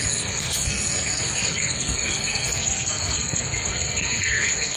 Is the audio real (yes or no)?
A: no